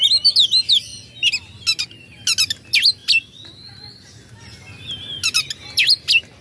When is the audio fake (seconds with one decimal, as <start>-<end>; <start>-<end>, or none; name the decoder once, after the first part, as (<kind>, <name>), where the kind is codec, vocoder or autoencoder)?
none